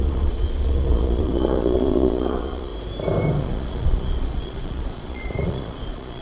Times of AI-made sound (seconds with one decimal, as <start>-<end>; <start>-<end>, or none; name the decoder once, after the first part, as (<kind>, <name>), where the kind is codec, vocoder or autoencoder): 0.0-2.7 (vocoder, Vocos); 3.4-6.2